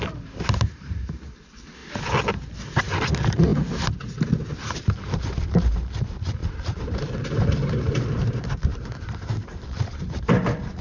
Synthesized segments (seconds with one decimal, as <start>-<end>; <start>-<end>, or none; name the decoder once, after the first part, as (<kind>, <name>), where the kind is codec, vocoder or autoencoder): 0.0-1.8 (vocoder, BigVGAN v2); 2.3-3.5; 4.7-10.8